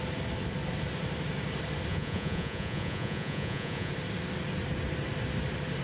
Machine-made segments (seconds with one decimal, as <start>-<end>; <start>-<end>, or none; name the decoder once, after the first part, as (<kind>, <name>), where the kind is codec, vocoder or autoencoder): 1.9-3.9 (vocoder, Vocos)